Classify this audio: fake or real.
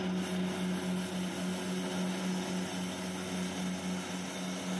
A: real